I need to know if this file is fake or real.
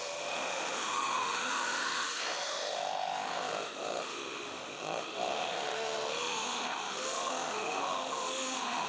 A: fake